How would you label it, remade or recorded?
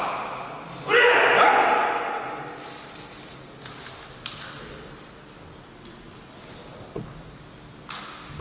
recorded